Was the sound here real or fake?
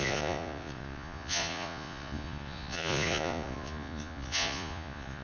fake